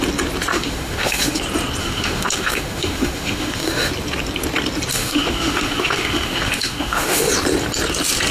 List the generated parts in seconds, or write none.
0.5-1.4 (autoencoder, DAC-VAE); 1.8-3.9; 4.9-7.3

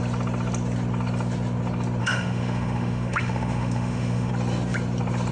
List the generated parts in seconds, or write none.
2.0-4.3 (autoencoder, DAC-VAE)